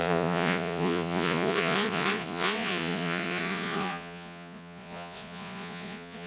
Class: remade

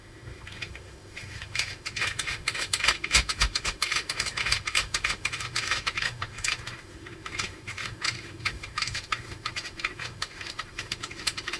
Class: remade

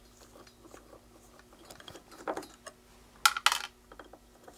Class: recorded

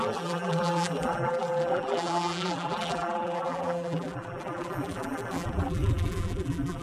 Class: remade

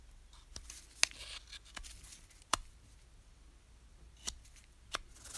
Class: recorded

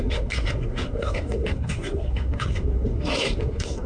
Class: remade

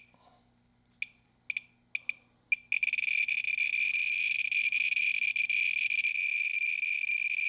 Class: recorded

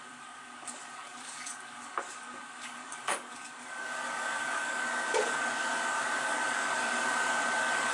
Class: remade